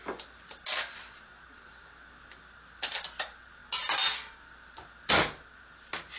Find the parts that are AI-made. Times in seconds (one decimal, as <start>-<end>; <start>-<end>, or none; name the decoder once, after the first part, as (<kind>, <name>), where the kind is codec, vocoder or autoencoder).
none